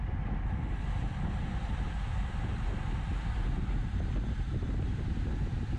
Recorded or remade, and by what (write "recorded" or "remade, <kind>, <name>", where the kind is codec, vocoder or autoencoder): recorded